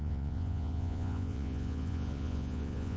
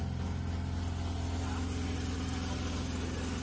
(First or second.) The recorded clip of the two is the second